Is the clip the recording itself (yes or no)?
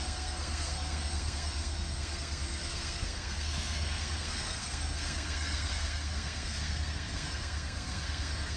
no